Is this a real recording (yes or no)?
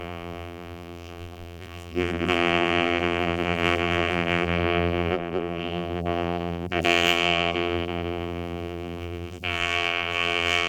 no